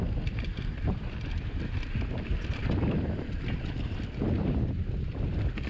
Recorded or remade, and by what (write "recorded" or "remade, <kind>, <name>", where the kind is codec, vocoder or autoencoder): recorded